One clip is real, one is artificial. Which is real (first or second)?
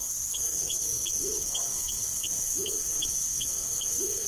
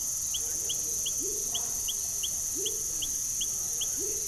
second